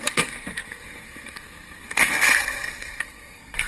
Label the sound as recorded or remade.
remade